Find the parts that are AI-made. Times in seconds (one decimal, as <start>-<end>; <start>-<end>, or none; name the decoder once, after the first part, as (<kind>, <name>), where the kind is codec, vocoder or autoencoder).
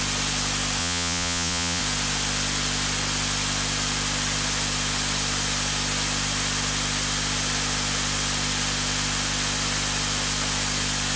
0.8-1.8 (vocoder, Vocos)